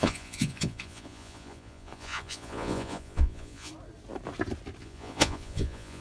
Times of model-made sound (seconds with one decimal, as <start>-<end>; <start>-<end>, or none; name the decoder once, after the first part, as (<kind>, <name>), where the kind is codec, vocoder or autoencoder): 0.0-3.7 (vocoder, Vocos); 4.8-6.0